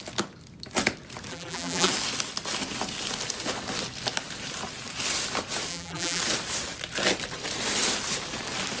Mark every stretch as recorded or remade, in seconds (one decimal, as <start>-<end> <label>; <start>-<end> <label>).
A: 0.0-1.3 recorded; 1.3-1.9 remade; 1.9-5.7 recorded; 5.7-6.2 remade; 6.2-8.8 recorded